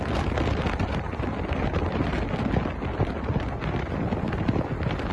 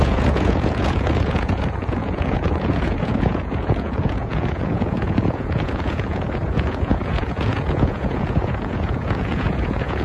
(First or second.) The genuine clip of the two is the first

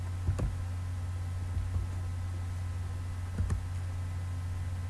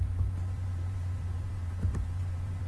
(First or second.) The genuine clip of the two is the first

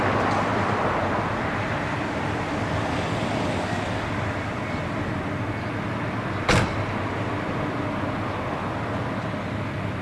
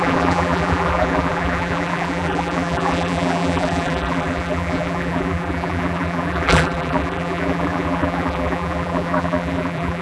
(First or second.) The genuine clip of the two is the first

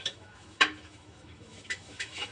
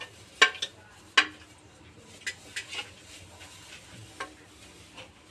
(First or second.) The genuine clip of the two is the second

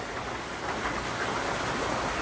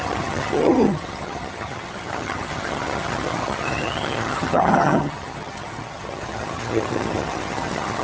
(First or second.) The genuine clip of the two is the first